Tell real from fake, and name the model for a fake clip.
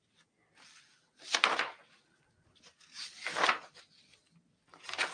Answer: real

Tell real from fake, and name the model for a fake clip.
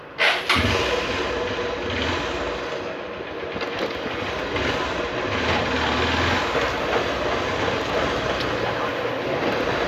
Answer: real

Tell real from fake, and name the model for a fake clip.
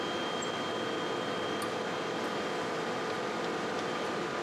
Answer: real